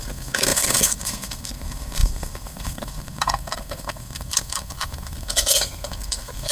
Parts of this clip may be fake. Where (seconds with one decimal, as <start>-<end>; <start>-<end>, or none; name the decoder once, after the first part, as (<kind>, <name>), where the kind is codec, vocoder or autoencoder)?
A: 0.0-6.5 (codec, SNAC)